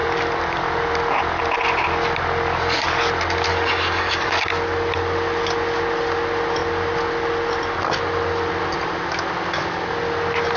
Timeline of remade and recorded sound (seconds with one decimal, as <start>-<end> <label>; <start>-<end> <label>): 0.0-3.5 recorded; 3.5-4.3 remade; 4.3-10.6 recorded